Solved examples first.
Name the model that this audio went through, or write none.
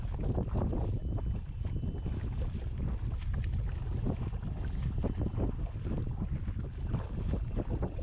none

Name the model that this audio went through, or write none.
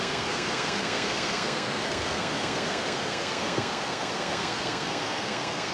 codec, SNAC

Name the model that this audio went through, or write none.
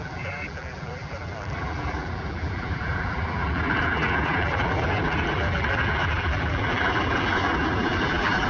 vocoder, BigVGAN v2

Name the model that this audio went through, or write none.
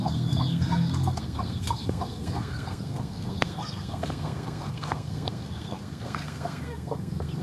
codec, SNAC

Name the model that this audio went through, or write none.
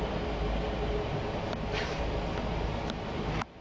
none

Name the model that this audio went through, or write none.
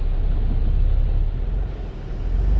none